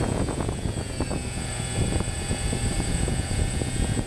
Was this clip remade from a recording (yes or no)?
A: yes